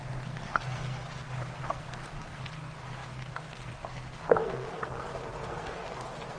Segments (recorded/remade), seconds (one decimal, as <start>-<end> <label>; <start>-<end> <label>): 0.0-6.4 remade